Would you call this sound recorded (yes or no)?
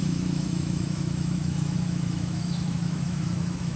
no